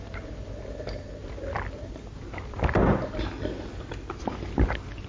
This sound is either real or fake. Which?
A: real